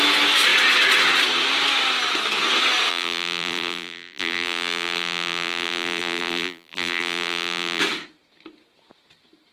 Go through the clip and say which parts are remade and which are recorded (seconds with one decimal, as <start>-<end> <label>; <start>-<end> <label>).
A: 0.0-2.9 recorded; 2.9-7.8 remade; 7.8-9.5 recorded